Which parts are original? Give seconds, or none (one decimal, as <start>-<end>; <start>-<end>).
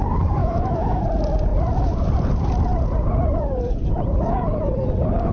0.0-0.4; 1.0-5.3